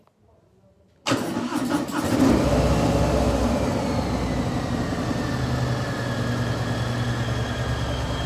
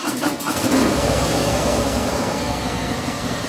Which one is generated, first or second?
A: second